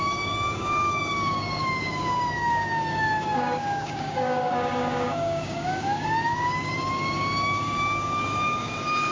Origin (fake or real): fake